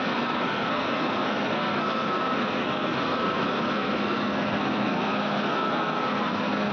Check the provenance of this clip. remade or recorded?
remade